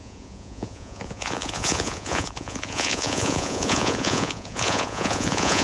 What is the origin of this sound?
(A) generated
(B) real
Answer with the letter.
A